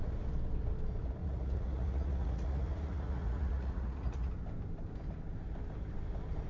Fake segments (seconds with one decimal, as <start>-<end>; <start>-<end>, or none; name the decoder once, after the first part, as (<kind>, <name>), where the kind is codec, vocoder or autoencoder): 1.2-4.3 (vocoder, Vocos)